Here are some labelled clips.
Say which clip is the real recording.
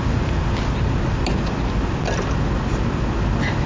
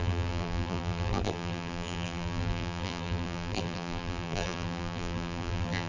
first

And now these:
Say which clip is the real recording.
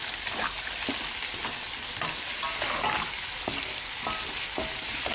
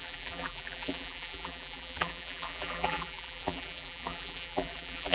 first